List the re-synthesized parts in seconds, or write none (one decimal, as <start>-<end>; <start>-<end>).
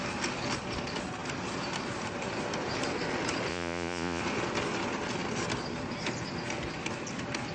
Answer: 3.5-4.2